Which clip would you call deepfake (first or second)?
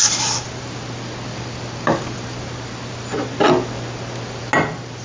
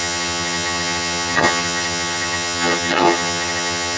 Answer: second